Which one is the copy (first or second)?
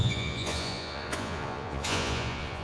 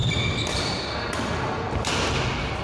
first